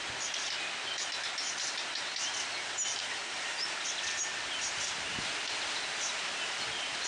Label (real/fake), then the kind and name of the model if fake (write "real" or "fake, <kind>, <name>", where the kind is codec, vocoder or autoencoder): real